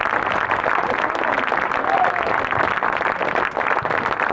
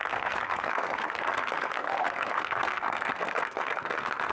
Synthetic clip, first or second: second